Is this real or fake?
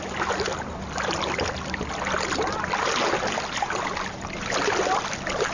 real